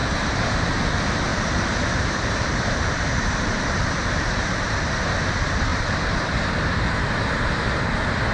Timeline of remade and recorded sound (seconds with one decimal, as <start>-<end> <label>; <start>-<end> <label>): 0.0-0.8 remade; 0.8-1.3 recorded; 1.3-4.9 remade; 4.9-5.7 recorded; 5.7-7.7 remade; 7.7-8.3 recorded